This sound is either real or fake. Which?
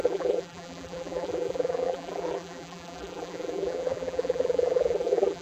fake